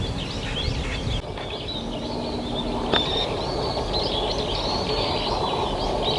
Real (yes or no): yes